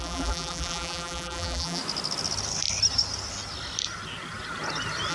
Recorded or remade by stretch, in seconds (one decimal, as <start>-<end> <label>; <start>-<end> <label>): 0.0-1.8 remade; 1.8-5.1 recorded